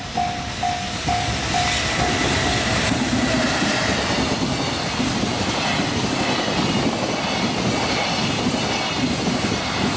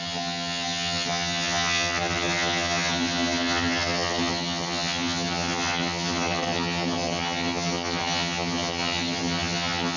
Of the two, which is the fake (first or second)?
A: second